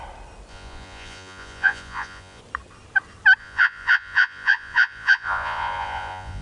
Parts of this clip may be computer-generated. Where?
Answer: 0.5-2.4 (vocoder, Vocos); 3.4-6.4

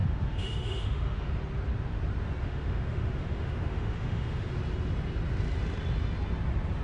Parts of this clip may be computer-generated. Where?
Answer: 0.0-1.3 (autoencoder, DAC-VAE); 2.4-4.5

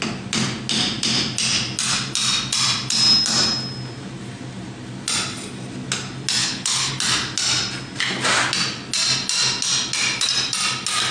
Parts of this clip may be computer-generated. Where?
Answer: 6.4-6.9 (codec, HILCodec)